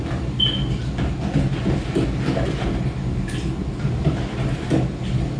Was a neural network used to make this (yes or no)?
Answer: no